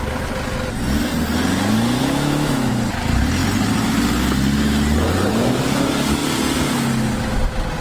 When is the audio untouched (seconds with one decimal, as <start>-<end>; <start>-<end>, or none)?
0.0-2.0; 2.7-7.8